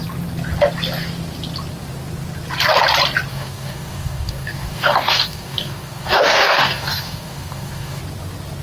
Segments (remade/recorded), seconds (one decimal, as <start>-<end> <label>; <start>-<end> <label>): 0.0-3.3 recorded; 3.3-8.0 remade; 8.0-8.6 recorded